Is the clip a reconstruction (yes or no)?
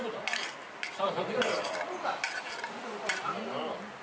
no